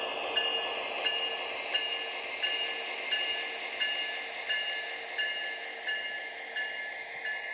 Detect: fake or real real